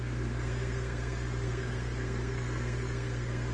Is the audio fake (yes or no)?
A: yes